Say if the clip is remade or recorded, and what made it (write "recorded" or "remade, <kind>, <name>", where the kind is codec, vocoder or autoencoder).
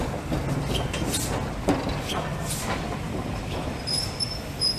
recorded